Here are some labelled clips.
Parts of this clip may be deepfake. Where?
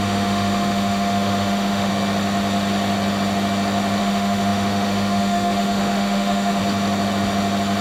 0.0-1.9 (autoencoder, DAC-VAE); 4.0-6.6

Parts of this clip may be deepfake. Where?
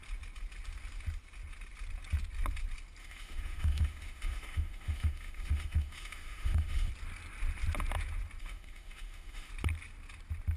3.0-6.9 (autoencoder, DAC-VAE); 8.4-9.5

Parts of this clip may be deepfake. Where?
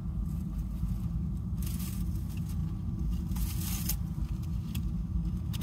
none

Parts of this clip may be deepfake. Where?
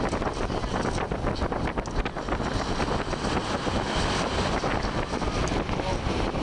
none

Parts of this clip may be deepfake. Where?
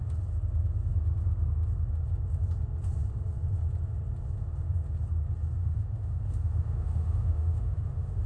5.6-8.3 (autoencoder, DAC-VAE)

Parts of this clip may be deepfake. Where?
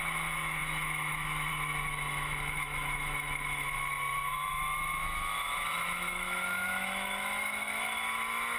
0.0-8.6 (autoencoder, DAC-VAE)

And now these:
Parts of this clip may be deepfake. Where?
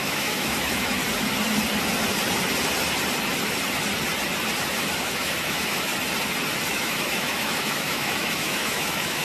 0.0-1.0 (autoencoder, DAC-VAE); 5.0-5.9; 6.7-9.2